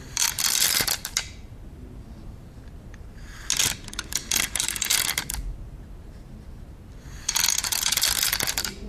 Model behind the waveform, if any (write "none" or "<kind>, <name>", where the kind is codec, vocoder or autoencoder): none